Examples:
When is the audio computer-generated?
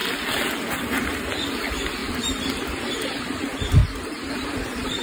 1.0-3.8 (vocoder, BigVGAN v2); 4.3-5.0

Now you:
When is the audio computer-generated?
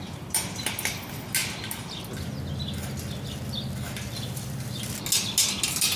none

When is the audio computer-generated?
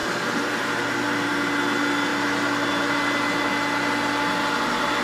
0.0-1.3 (vocoder, BigVGAN v2)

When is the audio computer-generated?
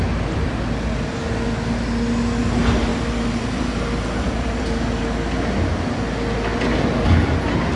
2.9-5.0 (vocoder, BigVGAN v2)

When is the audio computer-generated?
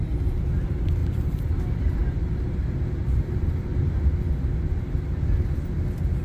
1.0-1.6 (vocoder, BigVGAN v2)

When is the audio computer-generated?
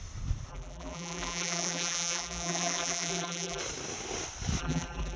0.5-3.6 (vocoder, BigVGAN v2); 4.6-5.2